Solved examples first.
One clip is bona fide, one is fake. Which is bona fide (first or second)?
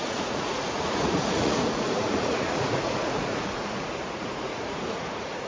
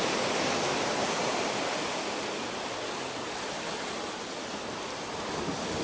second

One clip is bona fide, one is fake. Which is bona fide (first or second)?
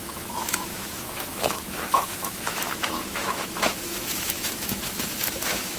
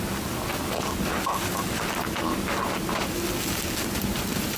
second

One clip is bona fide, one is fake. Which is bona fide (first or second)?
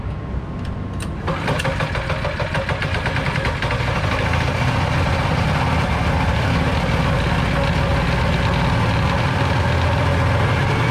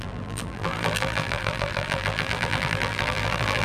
first